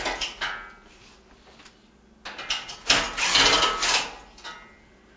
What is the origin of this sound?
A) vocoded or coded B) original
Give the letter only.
B